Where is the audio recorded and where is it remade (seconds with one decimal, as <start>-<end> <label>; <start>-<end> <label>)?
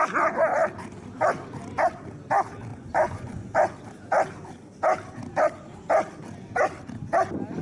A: 0.0-2.7 recorded; 2.7-3.7 remade; 3.7-7.6 recorded